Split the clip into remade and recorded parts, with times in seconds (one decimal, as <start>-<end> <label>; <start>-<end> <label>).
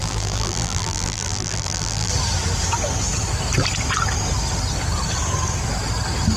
0.0-2.1 remade; 2.1-6.4 recorded